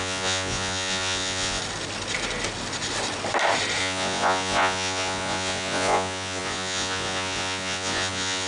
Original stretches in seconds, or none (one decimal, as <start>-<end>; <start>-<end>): 1.6-3.8